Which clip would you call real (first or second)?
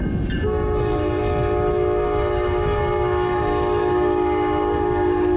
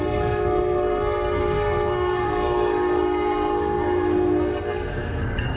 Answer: first